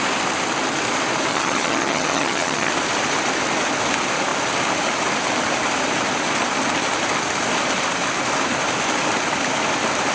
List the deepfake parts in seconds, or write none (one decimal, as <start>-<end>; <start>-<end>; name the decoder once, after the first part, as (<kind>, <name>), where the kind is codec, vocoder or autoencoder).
1.3-2.7 (vocoder, HiFi-GAN)